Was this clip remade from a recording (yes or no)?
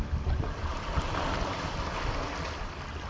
no